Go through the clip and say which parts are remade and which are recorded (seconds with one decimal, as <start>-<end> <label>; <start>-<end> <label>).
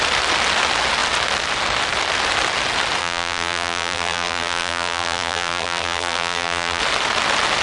0.0-3.0 recorded; 3.0-6.8 remade; 6.8-7.6 recorded